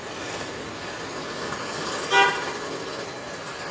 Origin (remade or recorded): recorded